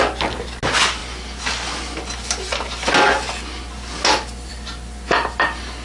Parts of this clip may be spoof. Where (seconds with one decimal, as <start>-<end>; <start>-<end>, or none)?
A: none